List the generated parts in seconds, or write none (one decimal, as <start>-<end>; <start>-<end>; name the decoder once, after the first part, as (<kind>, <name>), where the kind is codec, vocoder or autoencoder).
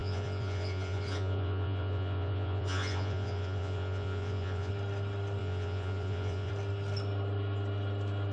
0.0-4.7 (vocoder, Vocos); 5.4-6.5